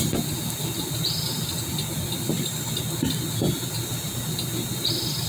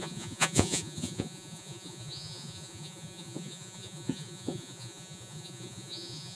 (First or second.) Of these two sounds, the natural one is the first